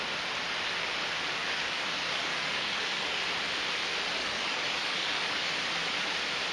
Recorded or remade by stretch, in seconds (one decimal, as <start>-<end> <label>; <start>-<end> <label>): 0.0-1.4 recorded; 1.4-3.2 remade; 3.2-4.2 recorded; 4.2-5.5 remade; 5.5-6.5 recorded